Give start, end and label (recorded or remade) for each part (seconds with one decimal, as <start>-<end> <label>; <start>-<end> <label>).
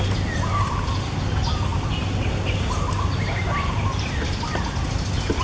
0.0-5.4 recorded